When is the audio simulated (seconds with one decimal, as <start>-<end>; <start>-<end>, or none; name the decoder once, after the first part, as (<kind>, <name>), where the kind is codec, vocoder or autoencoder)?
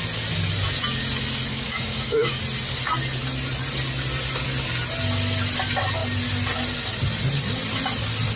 1.5-2.4 (codec, DAC)